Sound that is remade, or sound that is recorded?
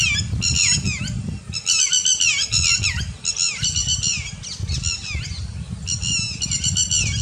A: recorded